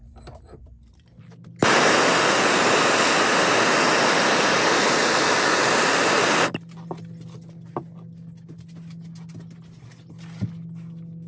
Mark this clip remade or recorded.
recorded